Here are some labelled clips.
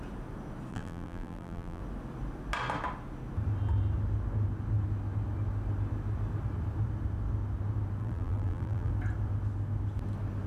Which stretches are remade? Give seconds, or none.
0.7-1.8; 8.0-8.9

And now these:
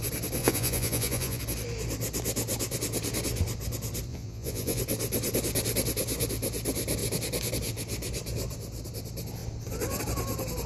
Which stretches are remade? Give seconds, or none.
0.4-1.4; 4.1-4.8

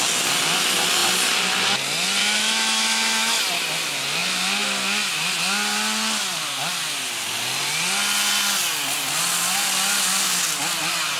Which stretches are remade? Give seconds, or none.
2.2-3.4

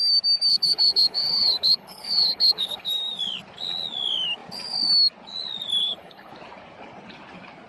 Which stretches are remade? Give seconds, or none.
0.5-2.9; 5.8-6.3

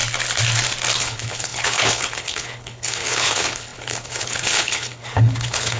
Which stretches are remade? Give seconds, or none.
1.0-5.8

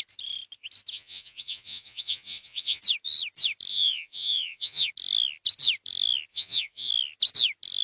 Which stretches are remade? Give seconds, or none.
0.9-2.8; 3.7-4.9; 6.3-6.9

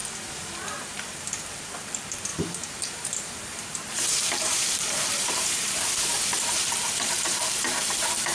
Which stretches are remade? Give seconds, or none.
0.8-8.3

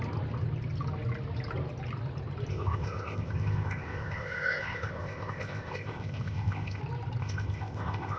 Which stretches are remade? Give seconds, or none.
2.5-6.8; 7.2-8.2